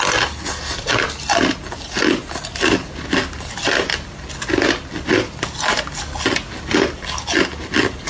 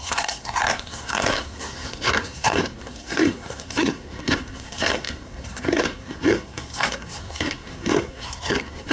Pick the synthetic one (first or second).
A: second